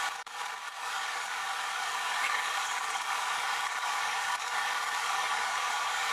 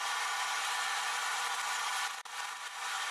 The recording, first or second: second